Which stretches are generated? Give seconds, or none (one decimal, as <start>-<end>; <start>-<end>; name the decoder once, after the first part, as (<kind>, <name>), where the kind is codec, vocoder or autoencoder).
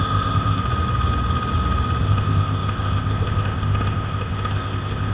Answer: 0.0-0.6 (codec, ZipCodec); 2.0-5.1